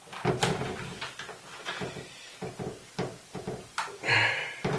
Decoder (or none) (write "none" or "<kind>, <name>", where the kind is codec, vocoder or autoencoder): none